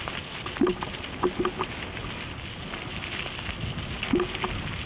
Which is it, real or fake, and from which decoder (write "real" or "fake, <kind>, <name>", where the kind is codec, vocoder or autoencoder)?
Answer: real